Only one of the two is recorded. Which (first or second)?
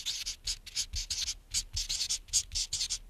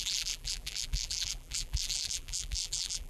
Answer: first